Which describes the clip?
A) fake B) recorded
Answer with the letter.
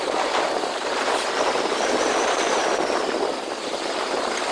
A